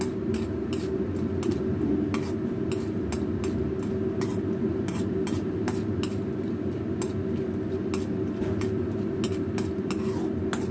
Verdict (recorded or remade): recorded